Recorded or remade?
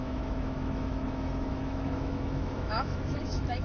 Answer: remade